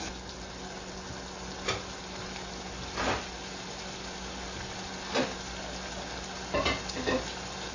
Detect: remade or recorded recorded